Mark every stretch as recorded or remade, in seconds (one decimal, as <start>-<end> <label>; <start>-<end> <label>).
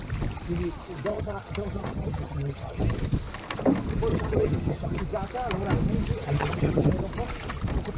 0.0-1.1 recorded; 1.1-2.8 remade; 2.8-4.1 recorded; 4.1-5.0 remade; 5.0-6.2 recorded; 6.2-6.9 remade; 6.9-8.0 recorded